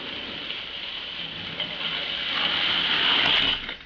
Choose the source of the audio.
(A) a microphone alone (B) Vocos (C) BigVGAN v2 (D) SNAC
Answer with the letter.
A